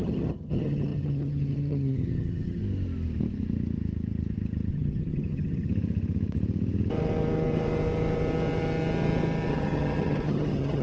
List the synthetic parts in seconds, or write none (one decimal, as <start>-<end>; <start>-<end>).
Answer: 0.0-2.6; 4.7-5.7; 9.5-10.8